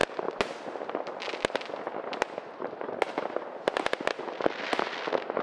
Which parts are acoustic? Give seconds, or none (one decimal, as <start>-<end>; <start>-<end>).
0.0-5.4